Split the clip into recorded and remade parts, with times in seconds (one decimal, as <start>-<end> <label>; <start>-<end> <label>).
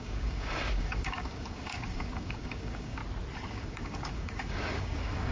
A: 0.0-3.0 remade; 3.0-3.5 recorded; 3.5-5.3 remade